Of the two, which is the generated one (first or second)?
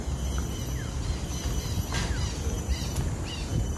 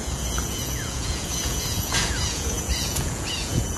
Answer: second